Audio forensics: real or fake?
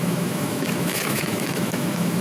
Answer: fake